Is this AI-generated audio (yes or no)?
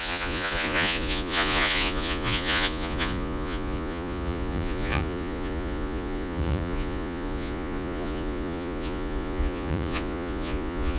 yes